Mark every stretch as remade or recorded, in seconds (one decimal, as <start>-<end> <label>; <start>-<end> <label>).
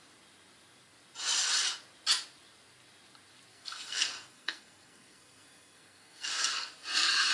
0.0-3.5 recorded; 3.5-7.3 remade